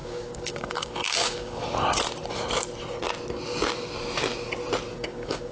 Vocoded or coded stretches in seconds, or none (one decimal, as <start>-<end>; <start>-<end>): 0.0-1.6; 4.9-5.5